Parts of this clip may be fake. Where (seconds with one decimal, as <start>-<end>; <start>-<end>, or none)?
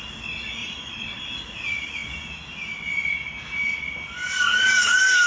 0.6-1.2